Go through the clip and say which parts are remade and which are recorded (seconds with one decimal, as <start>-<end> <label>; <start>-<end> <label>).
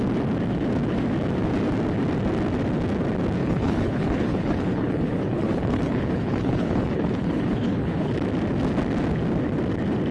0.0-3.4 recorded; 3.4-8.1 remade; 8.1-10.1 recorded